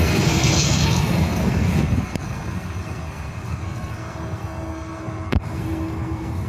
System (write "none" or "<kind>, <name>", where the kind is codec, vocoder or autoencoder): codec, SNAC